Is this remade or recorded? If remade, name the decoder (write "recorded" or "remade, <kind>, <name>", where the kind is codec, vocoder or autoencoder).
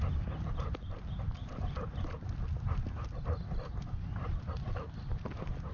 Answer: recorded